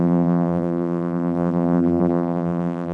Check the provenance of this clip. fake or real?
fake